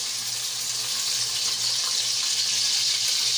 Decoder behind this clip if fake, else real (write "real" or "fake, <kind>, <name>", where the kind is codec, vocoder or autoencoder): real